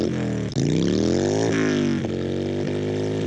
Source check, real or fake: real